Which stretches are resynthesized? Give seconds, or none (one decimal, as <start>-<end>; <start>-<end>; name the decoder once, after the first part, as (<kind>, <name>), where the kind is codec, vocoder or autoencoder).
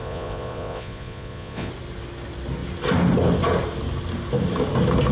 0.0-1.7 (vocoder, Vocos)